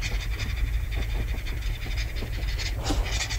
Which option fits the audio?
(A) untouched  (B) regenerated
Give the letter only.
A